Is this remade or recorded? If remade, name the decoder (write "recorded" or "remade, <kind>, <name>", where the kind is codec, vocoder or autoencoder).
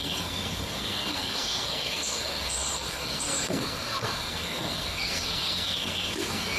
remade, codec, SNAC